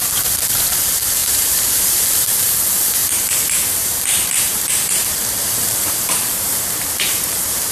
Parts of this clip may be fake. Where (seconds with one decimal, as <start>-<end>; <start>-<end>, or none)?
1.2-2.6; 3.0-7.7